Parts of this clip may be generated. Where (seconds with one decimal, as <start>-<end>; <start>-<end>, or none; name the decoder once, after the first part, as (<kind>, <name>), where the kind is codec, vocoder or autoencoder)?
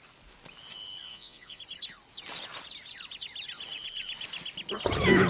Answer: 1.0-1.6 (vocoder, Vocos)